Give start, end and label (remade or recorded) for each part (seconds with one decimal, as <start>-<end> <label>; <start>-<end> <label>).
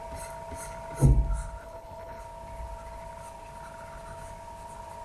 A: 0.0-1.6 recorded; 1.6-2.2 remade; 2.2-5.0 recorded